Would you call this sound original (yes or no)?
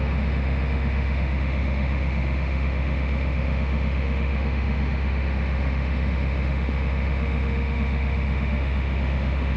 no